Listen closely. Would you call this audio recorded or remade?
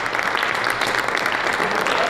recorded